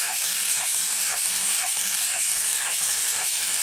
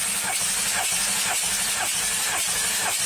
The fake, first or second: first